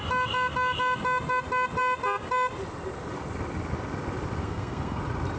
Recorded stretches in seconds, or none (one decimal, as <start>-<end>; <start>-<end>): 0.0-4.4; 5.0-5.4

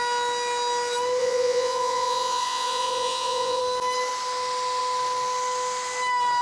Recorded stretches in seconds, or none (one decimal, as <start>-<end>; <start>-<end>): 0.0-1.2; 3.6-6.4

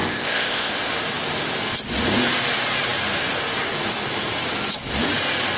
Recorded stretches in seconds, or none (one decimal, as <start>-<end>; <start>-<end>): 0.7-5.6

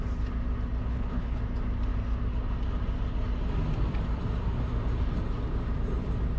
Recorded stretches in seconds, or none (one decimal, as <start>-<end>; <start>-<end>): 0.0-0.9; 1.4-6.4

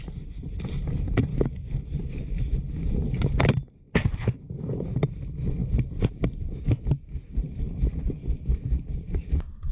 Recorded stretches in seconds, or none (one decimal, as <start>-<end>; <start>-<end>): 0.0-1.3; 1.8-9.7

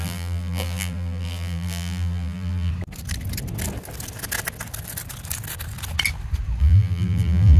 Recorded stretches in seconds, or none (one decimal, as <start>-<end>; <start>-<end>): 2.7-6.6

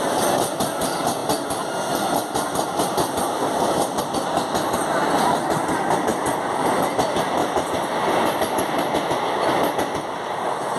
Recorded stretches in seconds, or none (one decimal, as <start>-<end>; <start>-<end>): 0.0-7.4; 8.0-10.8